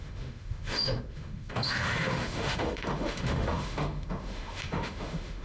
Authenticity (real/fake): fake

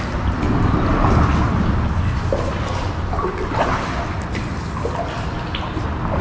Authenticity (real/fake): real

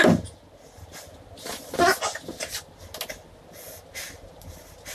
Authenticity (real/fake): real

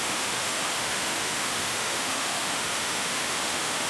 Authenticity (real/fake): fake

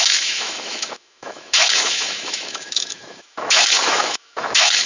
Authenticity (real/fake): fake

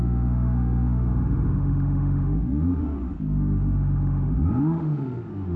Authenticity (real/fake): fake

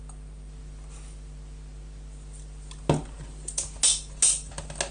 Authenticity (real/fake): real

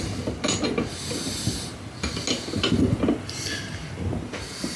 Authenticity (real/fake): real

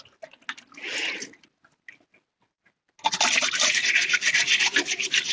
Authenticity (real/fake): real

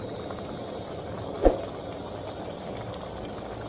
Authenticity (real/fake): real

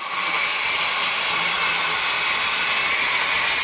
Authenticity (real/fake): real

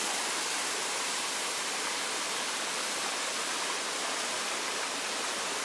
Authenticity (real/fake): real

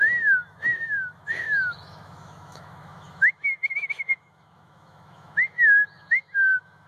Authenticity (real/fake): fake